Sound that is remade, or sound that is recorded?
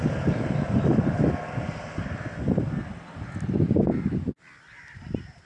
recorded